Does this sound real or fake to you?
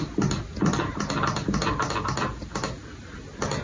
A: real